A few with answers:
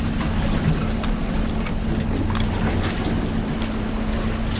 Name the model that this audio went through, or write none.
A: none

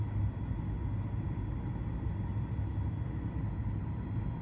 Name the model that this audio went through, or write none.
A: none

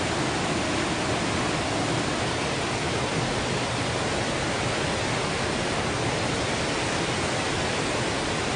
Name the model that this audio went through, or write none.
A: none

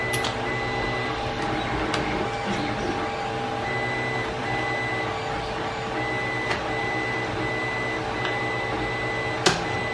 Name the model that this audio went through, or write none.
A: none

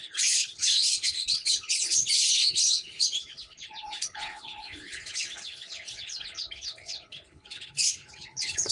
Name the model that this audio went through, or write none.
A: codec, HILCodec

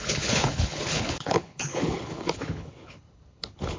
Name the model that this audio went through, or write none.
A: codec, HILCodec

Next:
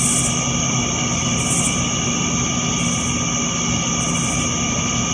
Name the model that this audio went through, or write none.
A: none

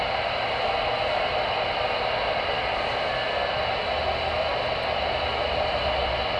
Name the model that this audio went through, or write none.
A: none